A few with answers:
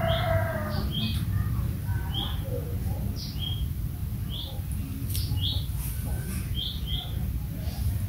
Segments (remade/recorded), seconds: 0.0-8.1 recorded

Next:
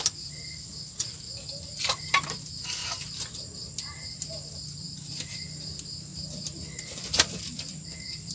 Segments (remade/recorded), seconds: 0.0-8.3 recorded

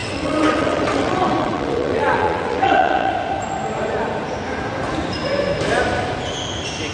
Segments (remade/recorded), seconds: 0.0-3.1 remade; 3.1-6.9 recorded

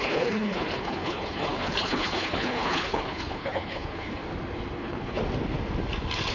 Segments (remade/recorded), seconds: 0.0-4.2 remade; 4.2-4.8 recorded; 4.8-5.2 remade; 5.2-6.3 recorded